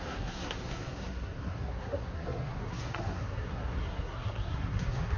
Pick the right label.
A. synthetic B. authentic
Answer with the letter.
A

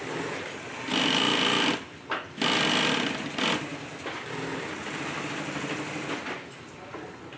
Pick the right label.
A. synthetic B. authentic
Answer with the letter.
B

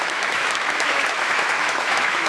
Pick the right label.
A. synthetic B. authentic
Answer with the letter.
A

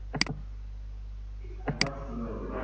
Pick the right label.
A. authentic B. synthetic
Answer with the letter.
A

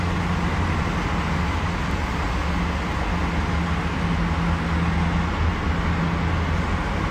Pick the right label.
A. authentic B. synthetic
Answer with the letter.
A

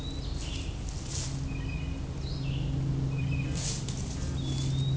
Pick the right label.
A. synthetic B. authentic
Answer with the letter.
B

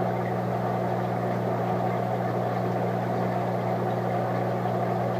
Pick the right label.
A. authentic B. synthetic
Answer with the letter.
A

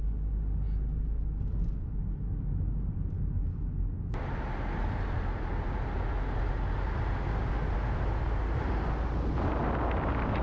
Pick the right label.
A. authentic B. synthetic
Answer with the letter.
A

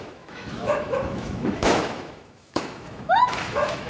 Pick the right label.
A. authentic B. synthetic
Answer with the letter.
B